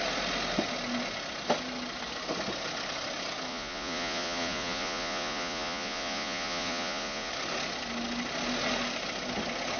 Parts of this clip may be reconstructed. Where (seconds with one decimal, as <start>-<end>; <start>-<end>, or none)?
3.5-7.3